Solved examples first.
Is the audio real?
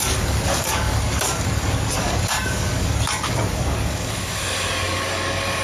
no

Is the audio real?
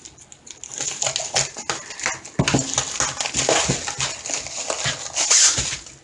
yes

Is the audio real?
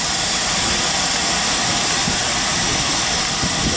yes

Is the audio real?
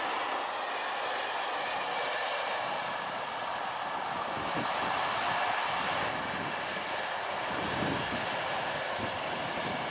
yes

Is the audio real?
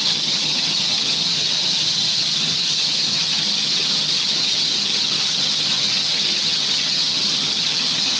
no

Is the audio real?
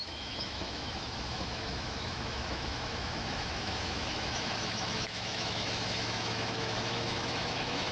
no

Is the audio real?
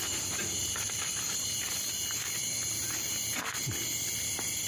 yes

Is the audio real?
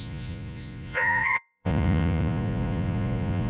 no